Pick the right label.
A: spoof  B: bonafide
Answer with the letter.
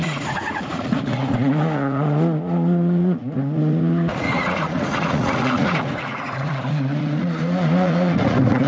A